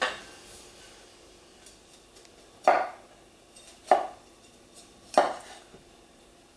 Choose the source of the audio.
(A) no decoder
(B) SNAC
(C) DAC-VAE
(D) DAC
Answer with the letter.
A